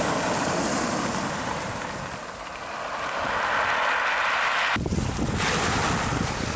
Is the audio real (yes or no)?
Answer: yes